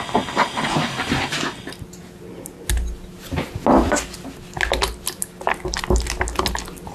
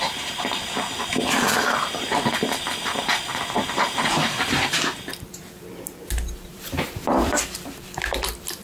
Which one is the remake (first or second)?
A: second